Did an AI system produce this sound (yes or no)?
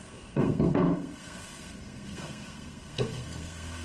yes